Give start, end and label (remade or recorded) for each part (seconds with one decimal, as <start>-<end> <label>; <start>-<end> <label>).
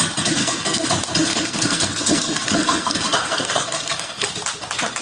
0.0-0.4 recorded; 0.4-0.9 remade; 0.9-1.3 recorded; 1.3-4.3 remade; 4.3-5.0 recorded